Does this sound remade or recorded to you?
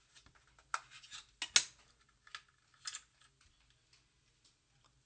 recorded